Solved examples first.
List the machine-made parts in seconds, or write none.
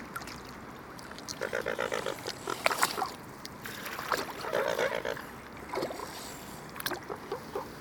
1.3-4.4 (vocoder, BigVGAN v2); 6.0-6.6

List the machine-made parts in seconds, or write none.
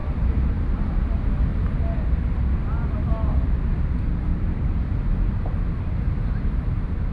0.0-1.5 (vocoder, BigVGAN v2); 5.8-7.1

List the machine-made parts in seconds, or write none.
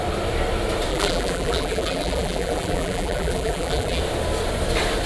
0.9-4.0 (vocoder, BigVGAN v2)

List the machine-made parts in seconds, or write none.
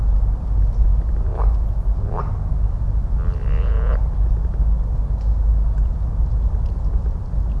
0.9-2.6 (vocoder, BigVGAN v2); 6.3-7.0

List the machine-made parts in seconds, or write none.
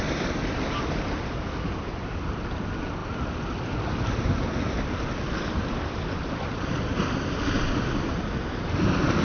none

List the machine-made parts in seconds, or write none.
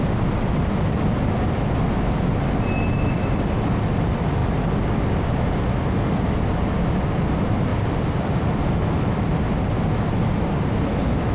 7.7-8.5 (vocoder, BigVGAN v2)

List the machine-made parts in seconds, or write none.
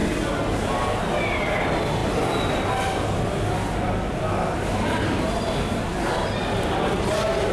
none